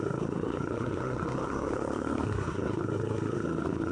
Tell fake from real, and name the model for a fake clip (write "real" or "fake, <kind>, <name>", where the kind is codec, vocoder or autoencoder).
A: fake, codec, SNAC